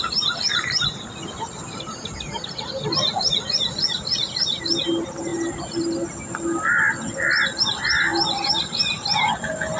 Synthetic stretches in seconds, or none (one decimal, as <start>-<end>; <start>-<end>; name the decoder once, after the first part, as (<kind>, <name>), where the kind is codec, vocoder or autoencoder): none